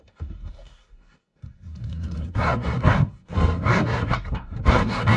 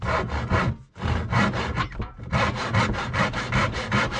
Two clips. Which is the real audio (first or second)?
second